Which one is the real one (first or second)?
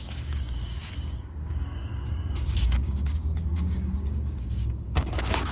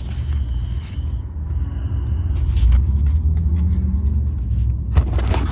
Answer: second